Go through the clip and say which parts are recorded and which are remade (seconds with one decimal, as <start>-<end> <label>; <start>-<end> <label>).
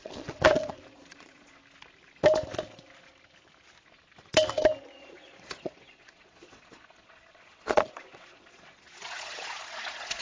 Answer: 0.0-1.6 remade; 1.6-4.8 recorded; 4.8-10.2 remade